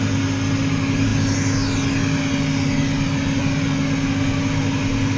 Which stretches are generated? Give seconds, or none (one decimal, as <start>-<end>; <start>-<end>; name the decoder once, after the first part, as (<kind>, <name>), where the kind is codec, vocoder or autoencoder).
none

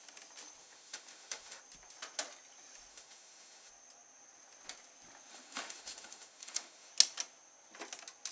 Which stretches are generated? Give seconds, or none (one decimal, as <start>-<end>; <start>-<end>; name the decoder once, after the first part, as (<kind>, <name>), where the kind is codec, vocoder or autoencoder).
0.6-1.6 (autoencoder, DAC-VAE); 2.9-3.7; 5.3-6.9

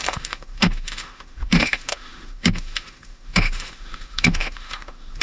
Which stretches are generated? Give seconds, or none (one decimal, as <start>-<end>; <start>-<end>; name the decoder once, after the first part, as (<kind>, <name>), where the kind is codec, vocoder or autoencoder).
0.0-5.2 (autoencoder, DAC-VAE)

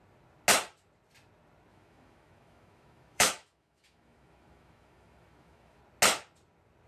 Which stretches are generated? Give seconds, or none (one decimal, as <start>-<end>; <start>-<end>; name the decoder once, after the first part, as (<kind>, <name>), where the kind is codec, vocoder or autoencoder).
1.7-5.8 (autoencoder, DAC-VAE)

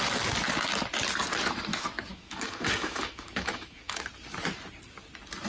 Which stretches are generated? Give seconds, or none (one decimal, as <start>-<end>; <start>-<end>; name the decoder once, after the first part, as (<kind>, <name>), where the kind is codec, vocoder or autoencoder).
1.7-4.0 (autoencoder, DAC-VAE)

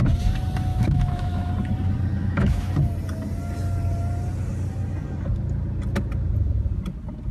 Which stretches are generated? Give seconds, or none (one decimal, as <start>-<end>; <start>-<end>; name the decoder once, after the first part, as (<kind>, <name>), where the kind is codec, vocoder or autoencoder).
0.7-1.5 (autoencoder, DAC-VAE); 2.2-2.7